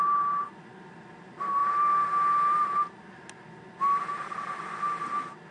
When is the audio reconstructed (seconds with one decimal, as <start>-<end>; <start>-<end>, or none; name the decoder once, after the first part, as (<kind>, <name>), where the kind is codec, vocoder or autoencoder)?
none